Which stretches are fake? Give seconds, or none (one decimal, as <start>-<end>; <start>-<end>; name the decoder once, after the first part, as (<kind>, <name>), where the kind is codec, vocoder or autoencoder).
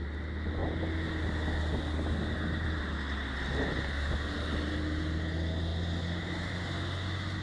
none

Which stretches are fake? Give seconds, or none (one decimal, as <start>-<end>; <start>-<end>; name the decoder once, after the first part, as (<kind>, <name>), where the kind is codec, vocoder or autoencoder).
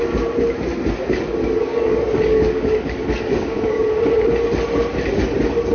1.7-3.8 (codec, DAC)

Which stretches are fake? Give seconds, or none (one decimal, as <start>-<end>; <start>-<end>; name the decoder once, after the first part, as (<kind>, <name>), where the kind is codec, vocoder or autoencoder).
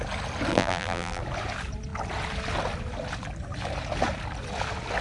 0.5-1.2 (vocoder, BigVGAN v2)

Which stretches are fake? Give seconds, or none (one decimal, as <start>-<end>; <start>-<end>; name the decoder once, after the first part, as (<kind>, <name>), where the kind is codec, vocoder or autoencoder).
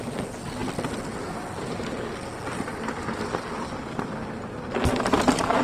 none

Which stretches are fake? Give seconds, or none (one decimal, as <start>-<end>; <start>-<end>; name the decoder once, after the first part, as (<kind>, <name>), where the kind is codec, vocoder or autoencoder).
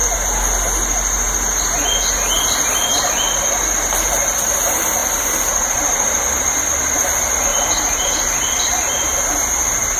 7.5-8.1 (vocoder, BigVGAN v2)